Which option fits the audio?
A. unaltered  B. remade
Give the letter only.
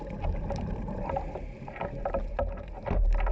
B